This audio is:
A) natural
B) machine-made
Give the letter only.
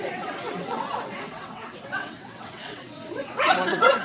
B